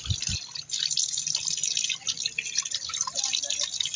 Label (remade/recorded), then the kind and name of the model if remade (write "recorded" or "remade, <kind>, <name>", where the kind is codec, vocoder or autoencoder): recorded